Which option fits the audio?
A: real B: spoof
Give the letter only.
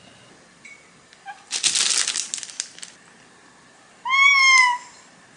A